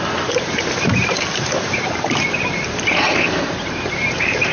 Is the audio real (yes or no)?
no